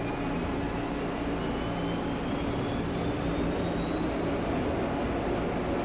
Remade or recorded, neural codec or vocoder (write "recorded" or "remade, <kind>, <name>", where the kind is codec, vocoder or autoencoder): recorded